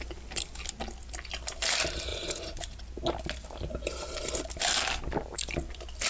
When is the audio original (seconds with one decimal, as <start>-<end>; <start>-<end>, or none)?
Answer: 0.0-2.1; 2.8-6.1